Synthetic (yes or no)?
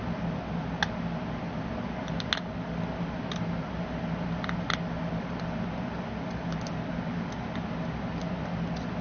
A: no